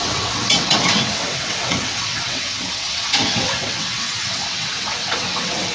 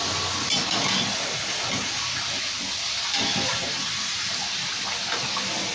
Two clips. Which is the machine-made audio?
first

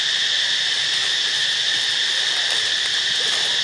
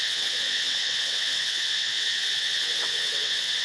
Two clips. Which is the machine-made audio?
second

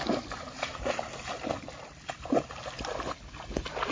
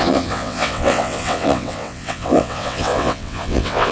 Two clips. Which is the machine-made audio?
second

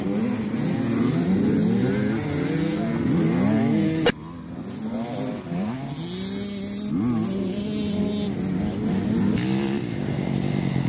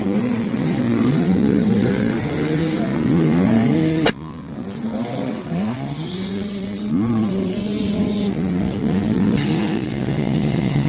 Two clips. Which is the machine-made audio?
second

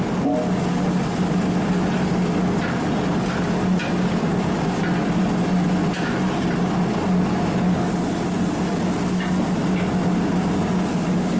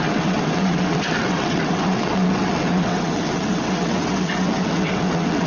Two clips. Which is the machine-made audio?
second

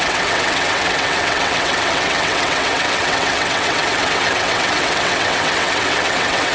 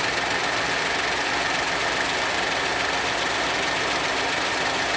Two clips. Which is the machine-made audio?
first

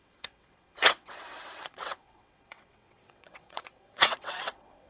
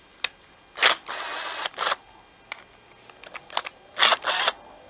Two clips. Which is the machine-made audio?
first